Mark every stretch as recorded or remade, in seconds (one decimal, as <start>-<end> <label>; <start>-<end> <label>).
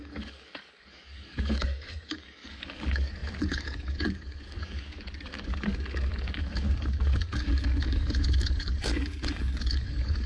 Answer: 0.0-10.3 remade